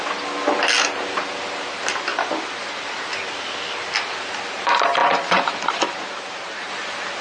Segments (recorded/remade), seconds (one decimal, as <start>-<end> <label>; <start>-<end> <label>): 0.0-5.0 recorded; 5.0-6.7 remade; 6.7-7.2 recorded